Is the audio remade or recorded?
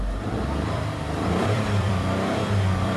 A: remade